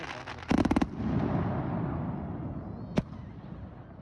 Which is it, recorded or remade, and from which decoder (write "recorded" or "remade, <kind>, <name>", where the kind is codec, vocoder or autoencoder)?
recorded